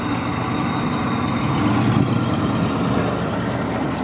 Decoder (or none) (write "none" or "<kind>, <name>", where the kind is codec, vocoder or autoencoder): none